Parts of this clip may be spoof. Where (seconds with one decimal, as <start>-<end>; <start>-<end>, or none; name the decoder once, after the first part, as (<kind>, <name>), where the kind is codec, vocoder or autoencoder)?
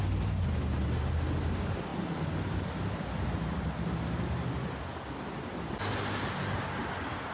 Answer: none